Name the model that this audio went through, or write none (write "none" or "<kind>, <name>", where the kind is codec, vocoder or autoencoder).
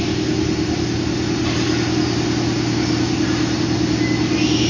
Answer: none